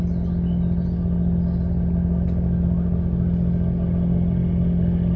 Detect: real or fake real